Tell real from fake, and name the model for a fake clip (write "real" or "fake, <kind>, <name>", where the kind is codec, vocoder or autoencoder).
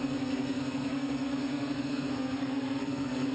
fake, codec, SNAC